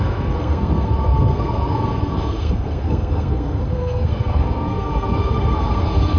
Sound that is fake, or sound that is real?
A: fake